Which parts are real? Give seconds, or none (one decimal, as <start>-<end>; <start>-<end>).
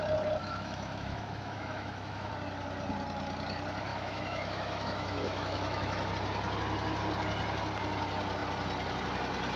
0.0-0.4; 2.3-3.9; 6.1-9.6